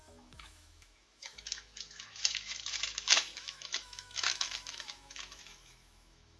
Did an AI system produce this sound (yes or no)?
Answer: yes